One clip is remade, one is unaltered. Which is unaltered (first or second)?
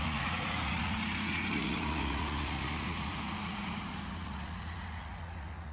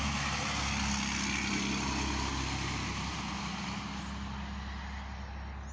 second